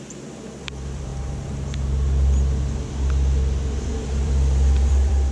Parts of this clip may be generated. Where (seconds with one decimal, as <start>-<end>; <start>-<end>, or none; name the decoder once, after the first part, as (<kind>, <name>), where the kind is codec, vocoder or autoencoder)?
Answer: 0.0-1.1 (vocoder, BigVGAN v2); 4.0-5.3